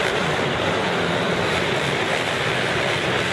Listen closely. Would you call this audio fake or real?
fake